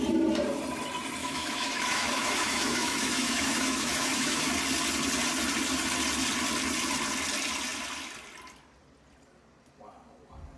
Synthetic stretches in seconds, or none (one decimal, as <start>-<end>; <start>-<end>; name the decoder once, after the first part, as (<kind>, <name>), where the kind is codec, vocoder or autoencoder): 1.2-4.5 (autoencoder, DAC-VAE)